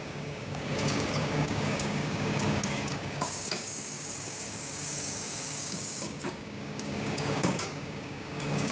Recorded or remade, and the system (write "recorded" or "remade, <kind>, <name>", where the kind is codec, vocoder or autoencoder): remade, codec, DAC